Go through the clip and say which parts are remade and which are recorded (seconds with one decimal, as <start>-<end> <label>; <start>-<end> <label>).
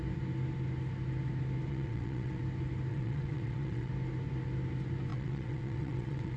0.0-1.7 recorded; 1.7-2.4 remade; 2.4-2.9 recorded; 2.9-3.9 remade; 3.9-5.1 recorded; 5.1-6.4 remade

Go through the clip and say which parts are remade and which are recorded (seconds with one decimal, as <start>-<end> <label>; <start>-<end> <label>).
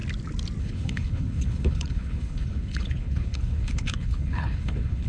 0.0-0.6 recorded; 0.6-5.1 remade